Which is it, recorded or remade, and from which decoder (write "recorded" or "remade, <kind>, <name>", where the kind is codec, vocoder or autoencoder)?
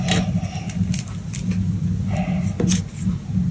recorded